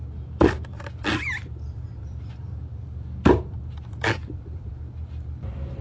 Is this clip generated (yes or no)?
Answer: yes